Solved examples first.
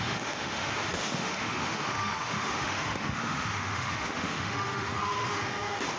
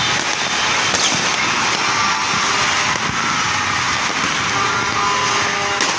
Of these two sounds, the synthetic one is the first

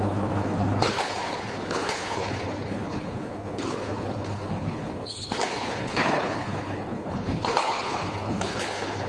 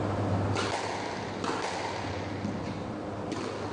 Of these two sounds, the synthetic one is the first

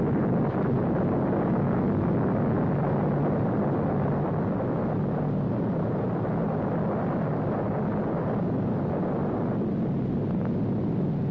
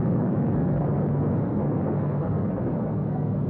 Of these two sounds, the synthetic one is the second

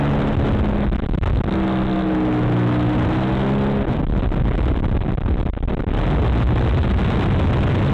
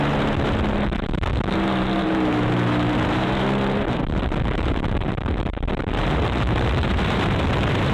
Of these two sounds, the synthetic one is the second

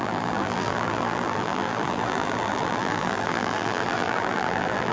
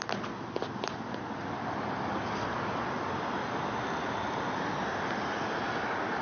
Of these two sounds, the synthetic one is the first